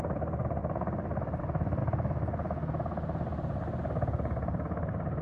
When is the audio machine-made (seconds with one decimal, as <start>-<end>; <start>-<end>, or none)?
0.0-1.8